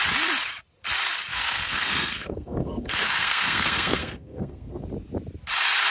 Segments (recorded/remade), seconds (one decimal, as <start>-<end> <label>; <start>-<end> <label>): 0.0-1.3 recorded; 1.3-4.8 remade; 4.8-5.9 recorded